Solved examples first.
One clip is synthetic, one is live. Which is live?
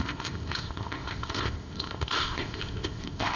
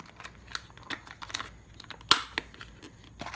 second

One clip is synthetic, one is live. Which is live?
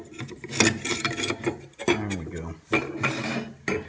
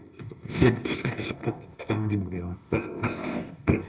first